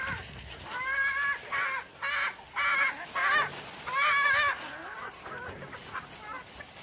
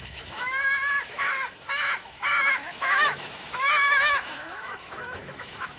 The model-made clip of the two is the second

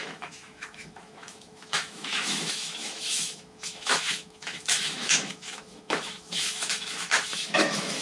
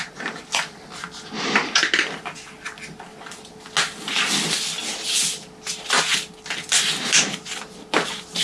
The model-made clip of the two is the first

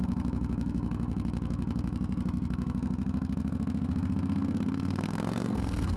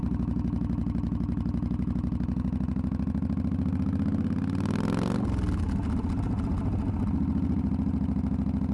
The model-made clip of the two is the first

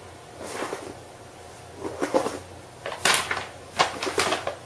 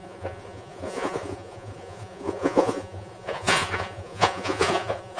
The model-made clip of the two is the second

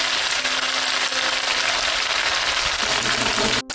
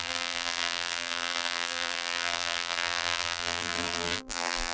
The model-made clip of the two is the second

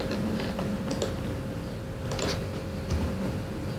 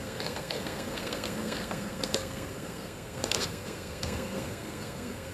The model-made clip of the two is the second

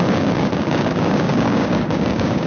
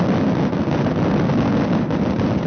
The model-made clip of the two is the first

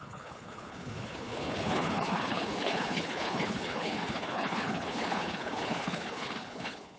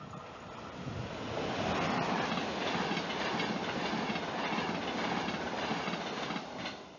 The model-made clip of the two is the first